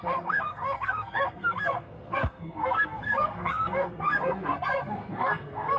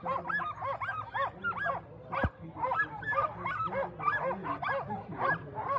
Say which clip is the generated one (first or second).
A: first